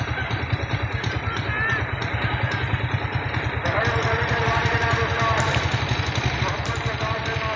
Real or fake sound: real